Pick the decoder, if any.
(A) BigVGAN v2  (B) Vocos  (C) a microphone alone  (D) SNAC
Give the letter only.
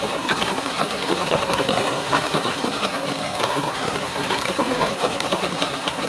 D